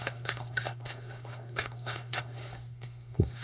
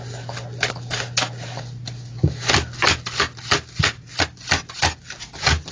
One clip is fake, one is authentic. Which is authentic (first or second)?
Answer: second